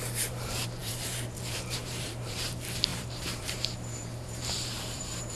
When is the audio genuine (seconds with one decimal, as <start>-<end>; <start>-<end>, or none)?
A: none